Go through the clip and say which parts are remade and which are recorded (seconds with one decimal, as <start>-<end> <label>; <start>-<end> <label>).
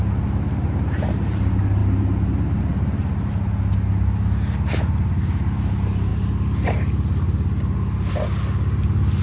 0.0-9.2 recorded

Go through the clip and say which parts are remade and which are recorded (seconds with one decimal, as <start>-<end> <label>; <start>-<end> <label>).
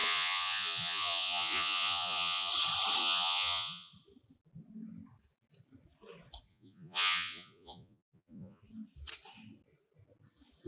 0.0-2.5 remade; 2.5-3.0 recorded; 3.0-3.9 remade; 3.9-6.5 recorded; 6.5-8.6 remade; 8.6-10.7 recorded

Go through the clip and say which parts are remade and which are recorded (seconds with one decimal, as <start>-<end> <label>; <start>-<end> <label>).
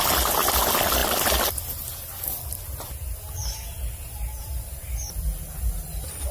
0.0-6.3 recorded